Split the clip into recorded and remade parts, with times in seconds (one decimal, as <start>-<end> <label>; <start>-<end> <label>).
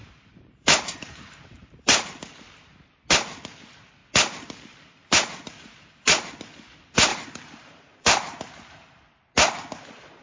0.0-2.1 remade; 2.1-5.0 recorded; 5.0-6.3 remade; 6.3-7.1 recorded; 7.1-9.2 remade; 9.2-10.2 recorded